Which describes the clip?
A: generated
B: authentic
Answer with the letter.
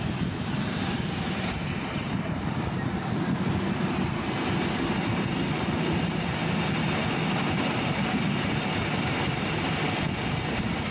B